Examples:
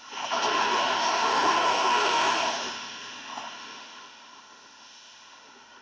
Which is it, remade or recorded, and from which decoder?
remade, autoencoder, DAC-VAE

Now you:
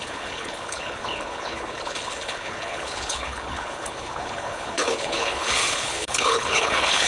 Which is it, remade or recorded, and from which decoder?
remade, codec, HILCodec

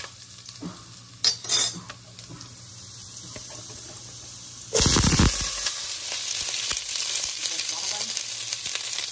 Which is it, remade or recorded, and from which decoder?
recorded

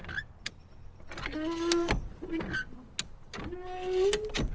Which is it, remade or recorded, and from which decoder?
recorded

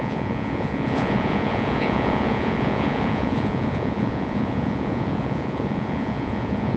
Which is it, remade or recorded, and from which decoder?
remade, vocoder, Vocos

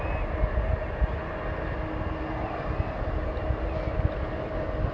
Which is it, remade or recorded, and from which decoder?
recorded